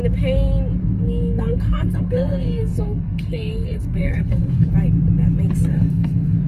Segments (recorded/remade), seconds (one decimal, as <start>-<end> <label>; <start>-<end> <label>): 0.0-0.8 recorded; 0.8-4.7 remade; 4.7-5.7 recorded; 5.7-6.5 remade